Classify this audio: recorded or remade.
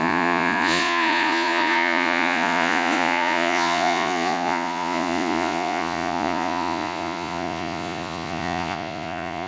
remade